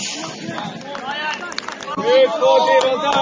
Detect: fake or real real